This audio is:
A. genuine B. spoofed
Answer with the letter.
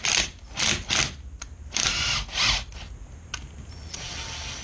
A